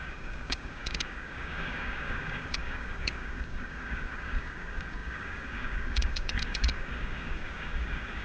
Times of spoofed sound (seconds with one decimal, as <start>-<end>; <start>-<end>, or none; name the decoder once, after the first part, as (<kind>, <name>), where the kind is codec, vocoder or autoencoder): 0.0-8.2 (codec, DAC)